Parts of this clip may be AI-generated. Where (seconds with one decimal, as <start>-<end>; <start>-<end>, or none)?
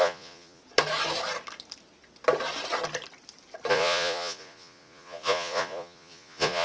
0.0-0.6; 3.7-6.6